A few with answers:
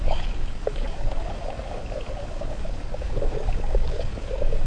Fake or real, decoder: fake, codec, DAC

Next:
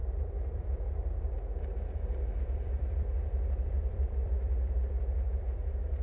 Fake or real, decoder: fake, vocoder, BigVGAN v2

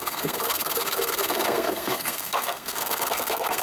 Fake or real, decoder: fake, codec, SNAC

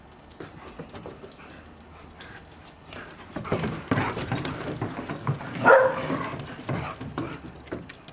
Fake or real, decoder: real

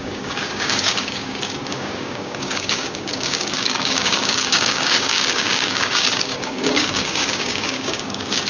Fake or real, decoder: fake, codec, DAC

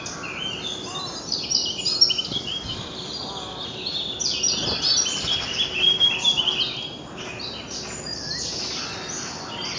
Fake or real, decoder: real